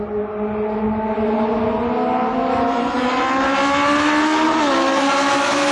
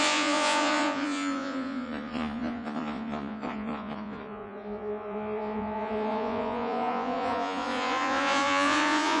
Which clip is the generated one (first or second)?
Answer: second